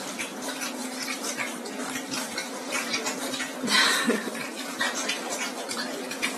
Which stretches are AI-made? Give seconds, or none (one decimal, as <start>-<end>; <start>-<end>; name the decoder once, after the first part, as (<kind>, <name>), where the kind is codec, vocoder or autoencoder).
none